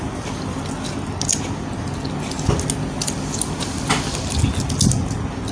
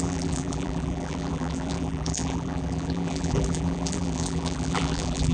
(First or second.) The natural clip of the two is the first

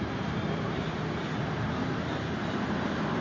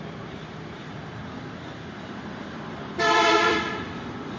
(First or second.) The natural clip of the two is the first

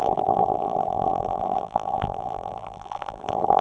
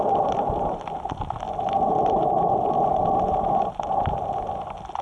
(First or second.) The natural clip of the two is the second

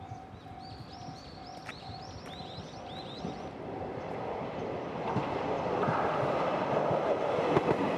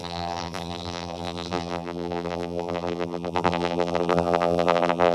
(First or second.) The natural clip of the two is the first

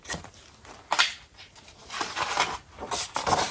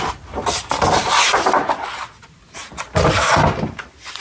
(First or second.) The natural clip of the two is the second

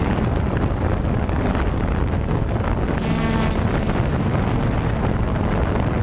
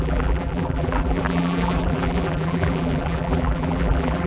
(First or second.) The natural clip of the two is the first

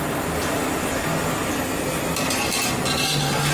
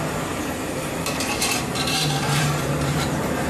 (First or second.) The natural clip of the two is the first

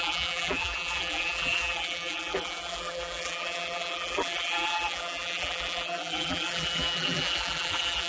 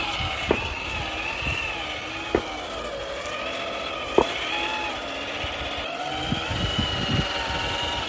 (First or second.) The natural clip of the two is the second